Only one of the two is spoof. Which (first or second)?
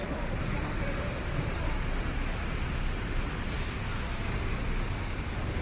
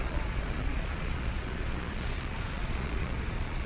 second